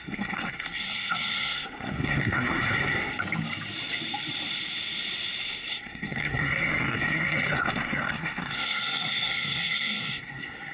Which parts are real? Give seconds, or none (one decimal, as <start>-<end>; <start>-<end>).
3.2-5.7